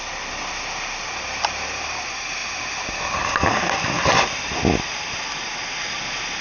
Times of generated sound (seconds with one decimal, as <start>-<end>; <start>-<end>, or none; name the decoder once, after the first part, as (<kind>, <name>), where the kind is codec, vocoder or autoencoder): none